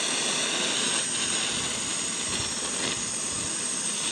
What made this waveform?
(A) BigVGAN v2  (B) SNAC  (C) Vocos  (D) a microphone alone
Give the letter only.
D